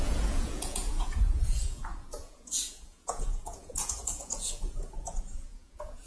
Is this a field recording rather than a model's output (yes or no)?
no